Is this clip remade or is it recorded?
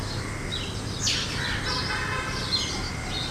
recorded